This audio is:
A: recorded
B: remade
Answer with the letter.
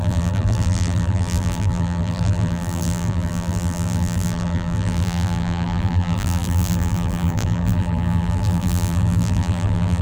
B